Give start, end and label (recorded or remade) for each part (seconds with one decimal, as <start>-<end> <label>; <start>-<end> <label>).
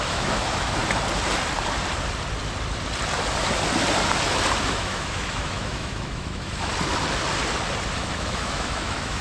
0.0-0.8 remade; 0.8-4.7 recorded; 4.7-6.7 remade; 6.7-8.0 recorded; 8.0-9.2 remade